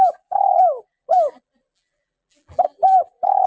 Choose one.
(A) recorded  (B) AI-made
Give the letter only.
B